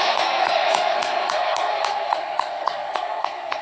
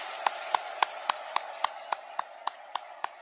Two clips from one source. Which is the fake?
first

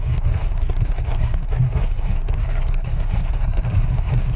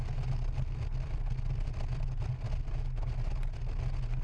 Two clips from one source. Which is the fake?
first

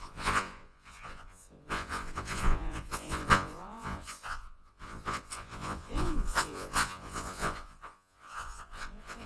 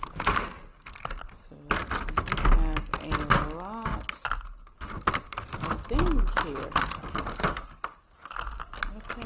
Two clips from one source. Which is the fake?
first